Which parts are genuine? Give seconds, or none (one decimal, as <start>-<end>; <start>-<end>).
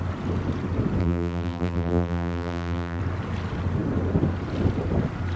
0.0-1.0; 3.0-5.4